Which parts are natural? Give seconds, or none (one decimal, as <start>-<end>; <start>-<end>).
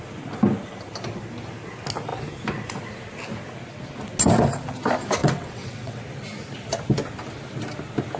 0.0-5.2; 6.0-8.2